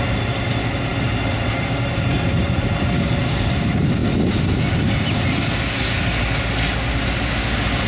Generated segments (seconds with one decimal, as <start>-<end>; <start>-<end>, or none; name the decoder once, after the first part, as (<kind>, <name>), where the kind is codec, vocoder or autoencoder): none